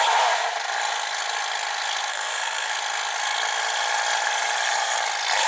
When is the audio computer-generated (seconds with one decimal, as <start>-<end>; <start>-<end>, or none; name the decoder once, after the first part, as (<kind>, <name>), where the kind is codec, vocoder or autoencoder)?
2.1-2.7 (codec, SNAC)